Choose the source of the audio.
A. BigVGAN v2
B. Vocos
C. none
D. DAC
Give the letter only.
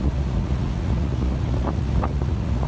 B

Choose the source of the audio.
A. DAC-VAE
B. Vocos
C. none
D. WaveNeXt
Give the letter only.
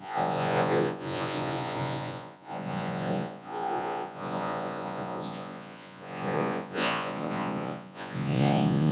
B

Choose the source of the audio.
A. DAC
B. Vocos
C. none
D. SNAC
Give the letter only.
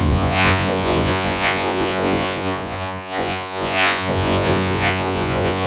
B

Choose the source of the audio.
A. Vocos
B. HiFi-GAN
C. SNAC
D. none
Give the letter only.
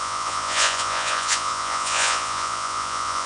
A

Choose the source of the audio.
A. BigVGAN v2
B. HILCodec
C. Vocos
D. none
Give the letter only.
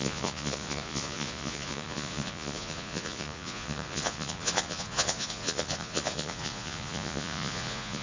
C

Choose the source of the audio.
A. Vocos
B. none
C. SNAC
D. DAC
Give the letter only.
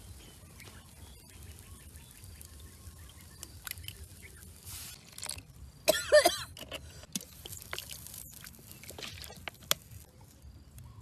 B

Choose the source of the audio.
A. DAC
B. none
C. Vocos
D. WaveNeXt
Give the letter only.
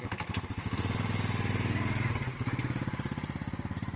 B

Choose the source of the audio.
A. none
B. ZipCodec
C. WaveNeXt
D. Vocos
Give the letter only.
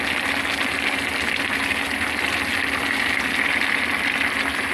A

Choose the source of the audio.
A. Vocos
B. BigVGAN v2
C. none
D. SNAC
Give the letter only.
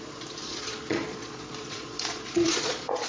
A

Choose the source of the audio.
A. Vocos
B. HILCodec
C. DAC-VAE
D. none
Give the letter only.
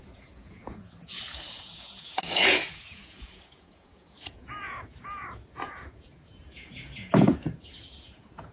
A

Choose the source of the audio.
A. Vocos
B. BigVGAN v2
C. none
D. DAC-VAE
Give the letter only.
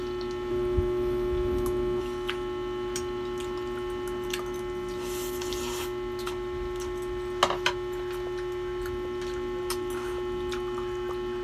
C